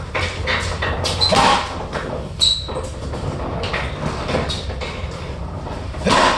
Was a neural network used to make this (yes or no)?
no